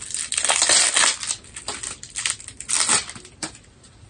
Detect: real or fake real